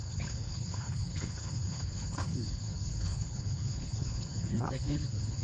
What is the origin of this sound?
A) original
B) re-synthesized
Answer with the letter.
B